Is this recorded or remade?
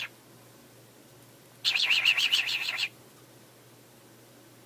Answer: recorded